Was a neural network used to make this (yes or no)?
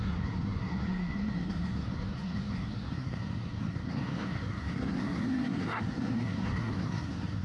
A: yes